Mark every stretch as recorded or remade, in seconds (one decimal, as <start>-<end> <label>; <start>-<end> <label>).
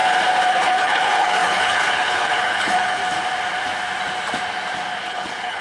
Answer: 0.0-0.5 recorded; 0.5-3.0 remade; 3.0-5.0 recorded; 5.0-5.6 remade